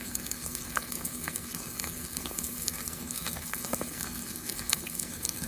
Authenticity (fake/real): fake